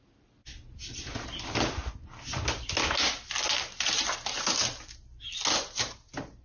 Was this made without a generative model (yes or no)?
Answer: yes